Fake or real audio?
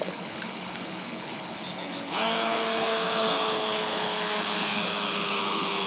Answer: fake